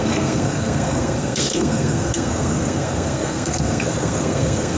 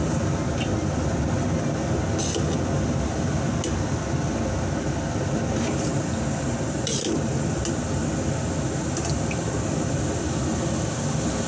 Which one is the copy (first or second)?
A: first